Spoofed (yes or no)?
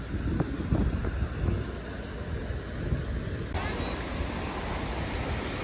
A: no